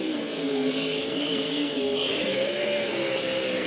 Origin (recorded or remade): remade